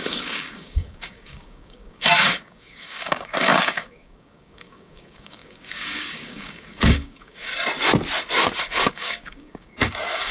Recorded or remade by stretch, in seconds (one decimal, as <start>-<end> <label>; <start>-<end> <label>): 0.0-7.5 remade; 7.5-8.6 recorded; 8.6-10.3 remade